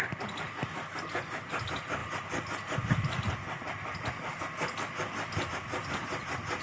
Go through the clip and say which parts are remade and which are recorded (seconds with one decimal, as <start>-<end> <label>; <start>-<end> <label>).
0.0-6.6 recorded